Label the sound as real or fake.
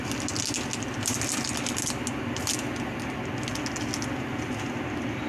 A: real